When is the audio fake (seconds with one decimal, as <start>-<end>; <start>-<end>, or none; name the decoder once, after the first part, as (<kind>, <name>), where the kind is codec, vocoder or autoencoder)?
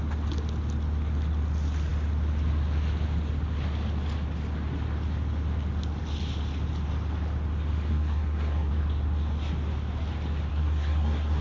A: 7.9-8.7 (codec, SNAC); 10.5-11.4